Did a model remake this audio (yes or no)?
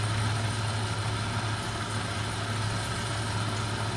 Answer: no